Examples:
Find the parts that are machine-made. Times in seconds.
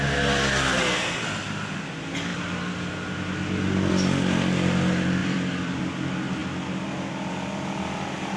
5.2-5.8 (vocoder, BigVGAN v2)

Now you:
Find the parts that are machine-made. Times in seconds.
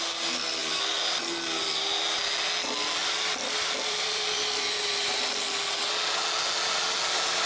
3.0-5.2 (vocoder, BigVGAN v2)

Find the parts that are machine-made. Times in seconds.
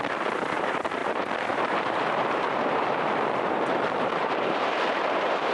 0.0-5.5 (vocoder, BigVGAN v2)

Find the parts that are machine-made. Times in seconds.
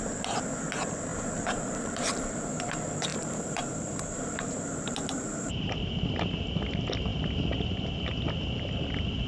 1.1-2.6 (vocoder, BigVGAN v2); 3.1-5.5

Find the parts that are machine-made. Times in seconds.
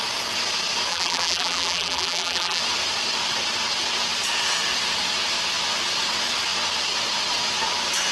0.9-2.6 (vocoder, BigVGAN v2)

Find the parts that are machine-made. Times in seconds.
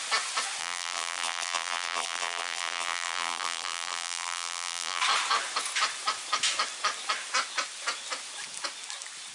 0.6-5.0 (vocoder, BigVGAN v2)